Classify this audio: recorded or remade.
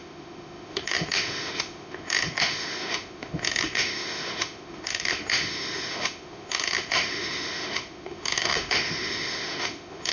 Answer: remade